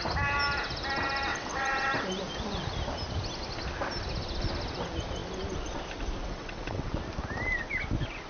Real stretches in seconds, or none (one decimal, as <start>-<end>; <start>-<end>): 0.0-1.3; 1.9-6.2; 6.9-8.3